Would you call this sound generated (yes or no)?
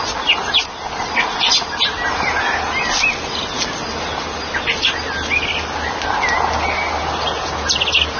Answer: no